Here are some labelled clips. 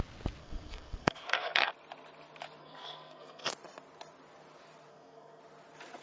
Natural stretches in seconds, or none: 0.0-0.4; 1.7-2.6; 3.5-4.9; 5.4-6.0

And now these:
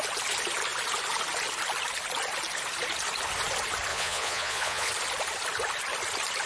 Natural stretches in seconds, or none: 0.0-3.9; 4.9-6.5

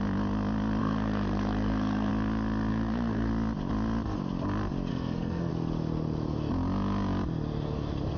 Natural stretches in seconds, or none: 0.0-0.8; 2.1-2.7; 3.3-4.9; 5.5-8.2

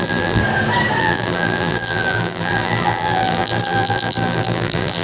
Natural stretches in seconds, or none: 0.4-1.0

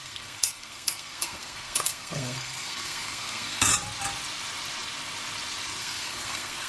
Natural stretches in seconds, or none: 3.7-5.8

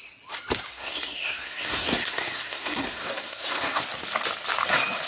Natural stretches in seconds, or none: 0.0-0.7; 3.8-5.1

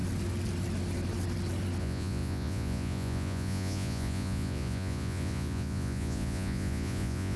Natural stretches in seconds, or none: 0.0-1.8